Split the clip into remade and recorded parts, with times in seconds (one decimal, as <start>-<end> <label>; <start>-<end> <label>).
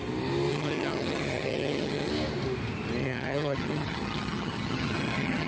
0.0-0.5 recorded; 0.5-2.1 remade; 2.1-3.0 recorded; 3.0-5.5 remade